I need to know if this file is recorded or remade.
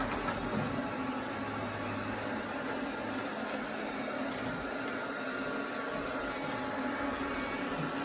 recorded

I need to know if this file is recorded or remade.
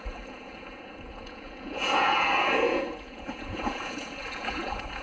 remade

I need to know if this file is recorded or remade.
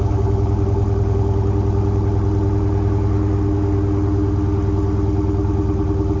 recorded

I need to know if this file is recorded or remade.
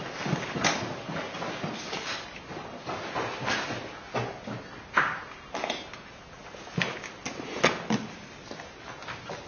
recorded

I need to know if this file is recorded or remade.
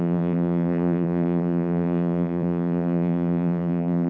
remade